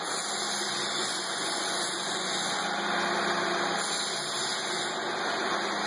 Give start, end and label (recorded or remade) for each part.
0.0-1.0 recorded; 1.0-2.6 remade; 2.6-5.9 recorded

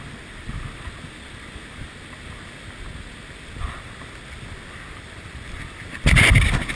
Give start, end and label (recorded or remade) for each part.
0.0-6.8 recorded

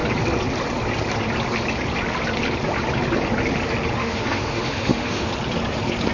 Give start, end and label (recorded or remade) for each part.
0.0-4.0 recorded; 4.0-5.3 remade; 5.3-6.1 recorded

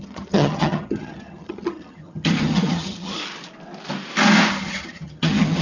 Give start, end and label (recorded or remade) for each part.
0.0-3.2 remade; 3.2-4.5 recorded; 4.5-5.6 remade